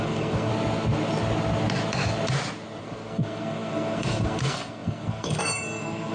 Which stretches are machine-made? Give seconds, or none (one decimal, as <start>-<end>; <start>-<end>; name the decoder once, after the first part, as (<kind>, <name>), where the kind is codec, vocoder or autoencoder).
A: 0.0-0.5 (codec, SNAC); 2.8-6.1